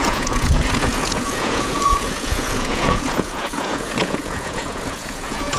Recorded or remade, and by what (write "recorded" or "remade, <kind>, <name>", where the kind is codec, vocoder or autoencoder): remade, vocoder, Vocos